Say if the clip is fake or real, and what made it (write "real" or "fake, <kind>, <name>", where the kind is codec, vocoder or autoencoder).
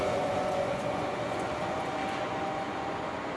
fake, vocoder, Vocos